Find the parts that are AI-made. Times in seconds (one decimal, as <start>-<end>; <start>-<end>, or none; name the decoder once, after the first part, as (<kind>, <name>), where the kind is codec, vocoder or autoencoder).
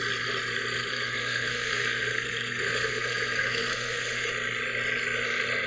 0.9-4.3 (codec, SNAC)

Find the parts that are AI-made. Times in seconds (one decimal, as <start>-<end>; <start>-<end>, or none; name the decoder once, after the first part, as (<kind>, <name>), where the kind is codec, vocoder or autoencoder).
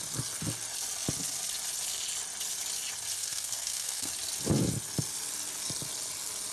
3.2-4.1 (codec, SNAC)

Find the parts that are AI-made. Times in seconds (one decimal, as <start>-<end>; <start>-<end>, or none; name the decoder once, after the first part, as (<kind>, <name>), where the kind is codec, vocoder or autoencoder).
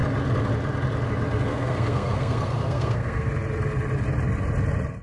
1.5-3.3 (codec, SNAC)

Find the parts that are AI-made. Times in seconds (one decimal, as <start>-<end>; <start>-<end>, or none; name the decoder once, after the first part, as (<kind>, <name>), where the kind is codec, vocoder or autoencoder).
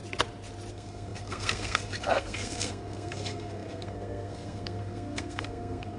0.7-6.0 (codec, SNAC)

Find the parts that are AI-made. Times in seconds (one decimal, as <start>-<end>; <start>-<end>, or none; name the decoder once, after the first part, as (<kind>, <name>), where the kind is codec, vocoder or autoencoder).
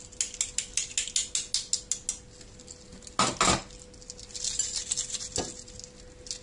none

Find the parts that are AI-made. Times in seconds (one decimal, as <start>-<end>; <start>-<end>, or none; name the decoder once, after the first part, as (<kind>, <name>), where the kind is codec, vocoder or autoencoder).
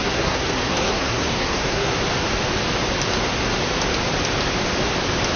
0.0-1.9 (codec, SNAC)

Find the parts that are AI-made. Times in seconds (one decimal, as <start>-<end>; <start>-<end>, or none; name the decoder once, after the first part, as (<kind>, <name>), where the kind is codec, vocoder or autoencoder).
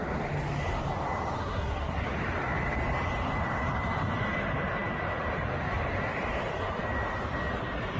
1.4-2.1 (codec, SNAC)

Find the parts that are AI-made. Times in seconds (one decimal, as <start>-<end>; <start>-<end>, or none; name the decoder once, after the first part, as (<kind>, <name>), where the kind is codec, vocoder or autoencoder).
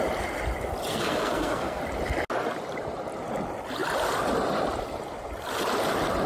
0.9-1.8 (codec, SNAC)